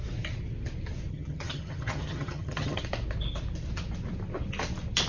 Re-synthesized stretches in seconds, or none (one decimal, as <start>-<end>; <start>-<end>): 1.1-2.8

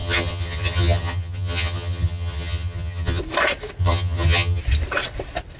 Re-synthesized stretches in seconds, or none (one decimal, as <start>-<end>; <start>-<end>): 0.0-3.2; 3.8-4.6

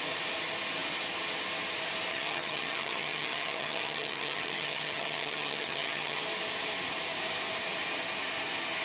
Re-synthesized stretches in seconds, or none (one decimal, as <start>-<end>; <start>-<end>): 2.1-6.2

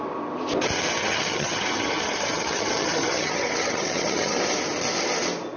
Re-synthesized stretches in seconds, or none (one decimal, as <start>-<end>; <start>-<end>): 1.0-4.4

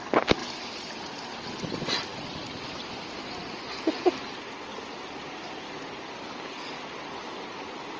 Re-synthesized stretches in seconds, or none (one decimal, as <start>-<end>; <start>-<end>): none